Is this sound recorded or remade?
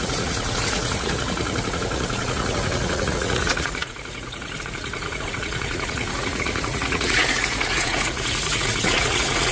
remade